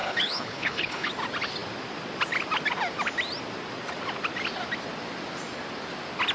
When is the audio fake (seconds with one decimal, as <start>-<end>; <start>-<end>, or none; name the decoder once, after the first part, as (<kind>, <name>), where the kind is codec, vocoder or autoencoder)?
0.0-1.1 (codec, HILCodec)